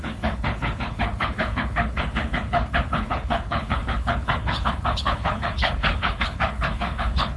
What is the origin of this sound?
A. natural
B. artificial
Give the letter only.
B